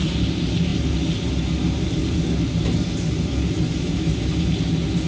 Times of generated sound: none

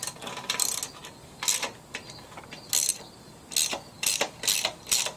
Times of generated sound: none